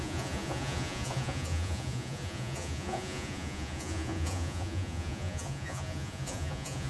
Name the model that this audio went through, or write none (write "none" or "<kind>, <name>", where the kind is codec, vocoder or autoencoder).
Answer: vocoder, Vocos